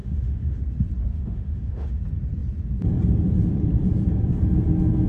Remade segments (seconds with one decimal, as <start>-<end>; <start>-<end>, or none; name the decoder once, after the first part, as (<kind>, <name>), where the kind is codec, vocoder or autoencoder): 0.0-0.6 (autoencoder, DAC-VAE); 1.1-2.0